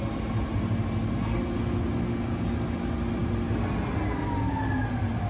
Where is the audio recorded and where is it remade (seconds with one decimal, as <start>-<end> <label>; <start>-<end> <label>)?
0.0-5.3 recorded